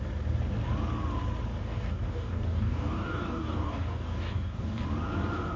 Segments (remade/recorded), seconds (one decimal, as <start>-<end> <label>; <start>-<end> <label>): 0.0-1.6 recorded; 1.6-4.8 remade; 4.8-5.6 recorded